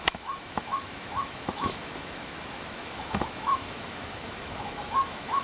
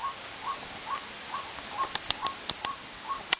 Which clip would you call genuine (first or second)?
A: second